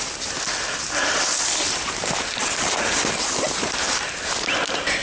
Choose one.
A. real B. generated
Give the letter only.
A